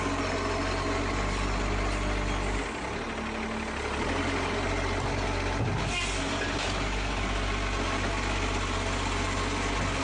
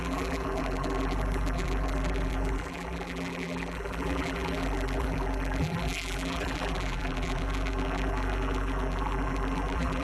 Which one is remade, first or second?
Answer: second